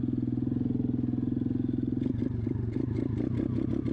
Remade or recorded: recorded